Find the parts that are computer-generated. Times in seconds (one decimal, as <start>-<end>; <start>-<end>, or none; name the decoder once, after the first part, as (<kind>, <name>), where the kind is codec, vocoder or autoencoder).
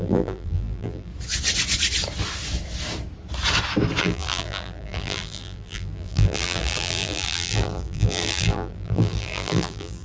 0.0-1.1 (vocoder, BigVGAN v2); 4.0-10.0